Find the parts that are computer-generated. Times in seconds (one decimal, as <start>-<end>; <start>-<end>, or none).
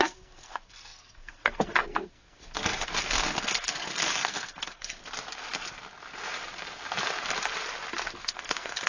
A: 0.0-5.0; 8.2-8.9